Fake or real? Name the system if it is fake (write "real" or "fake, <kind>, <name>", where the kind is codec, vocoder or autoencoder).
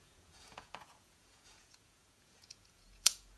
fake, vocoder, Vocos